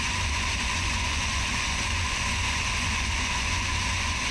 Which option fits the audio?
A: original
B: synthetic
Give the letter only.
B